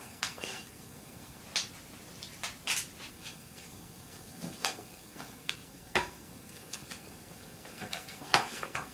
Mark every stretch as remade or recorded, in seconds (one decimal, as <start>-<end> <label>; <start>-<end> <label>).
0.0-1.4 remade; 1.4-3.1 recorded; 3.1-8.9 remade

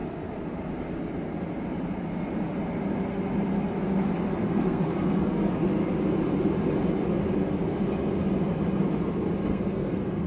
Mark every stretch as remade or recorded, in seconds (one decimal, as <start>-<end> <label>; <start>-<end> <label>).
0.0-4.4 recorded; 4.4-5.5 remade; 5.5-9.5 recorded; 9.5-10.3 remade